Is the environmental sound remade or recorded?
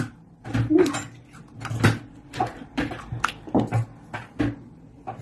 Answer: recorded